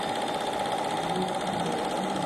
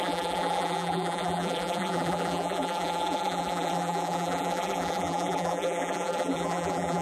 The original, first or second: first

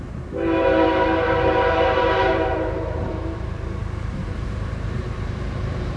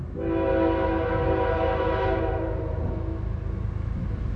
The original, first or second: second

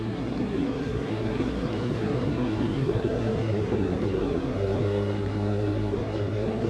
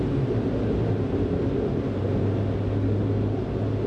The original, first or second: second